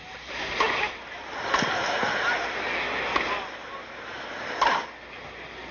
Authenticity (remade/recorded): recorded